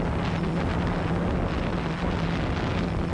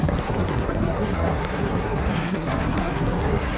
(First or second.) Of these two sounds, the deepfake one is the second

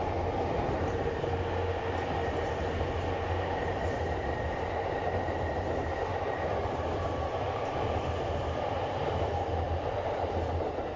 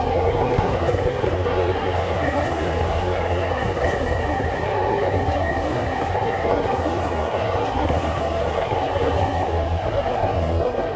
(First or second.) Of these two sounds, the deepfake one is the second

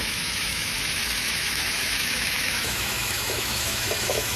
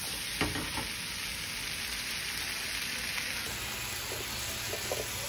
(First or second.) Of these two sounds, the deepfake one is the first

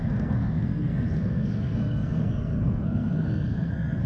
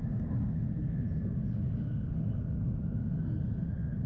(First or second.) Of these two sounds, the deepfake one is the first